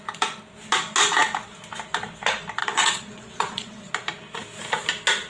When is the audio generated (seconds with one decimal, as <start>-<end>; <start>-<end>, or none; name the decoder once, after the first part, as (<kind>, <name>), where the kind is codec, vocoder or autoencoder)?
2.6-3.9 (vocoder, Vocos)